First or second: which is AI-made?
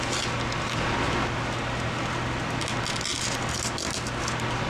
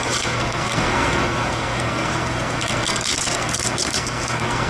second